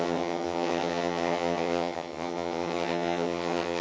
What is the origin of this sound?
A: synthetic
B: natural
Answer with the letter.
A